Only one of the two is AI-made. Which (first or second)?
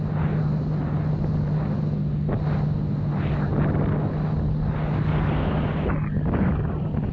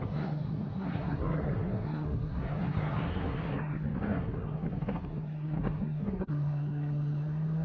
second